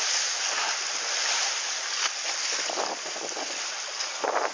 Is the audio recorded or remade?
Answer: recorded